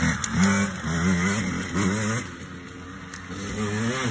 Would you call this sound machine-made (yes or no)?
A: no